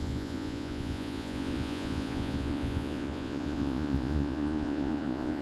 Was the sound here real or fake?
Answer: fake